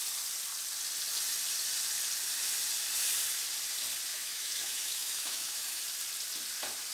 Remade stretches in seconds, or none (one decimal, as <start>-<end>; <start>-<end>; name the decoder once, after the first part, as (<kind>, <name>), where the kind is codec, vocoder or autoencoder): 4.1-5.8 (autoencoder, DAC-VAE)